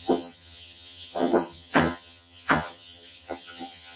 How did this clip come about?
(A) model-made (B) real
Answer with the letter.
A